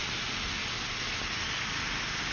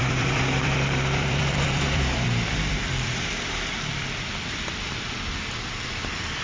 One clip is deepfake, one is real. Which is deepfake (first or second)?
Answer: second